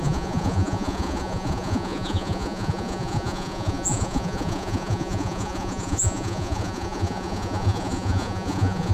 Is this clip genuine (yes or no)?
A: no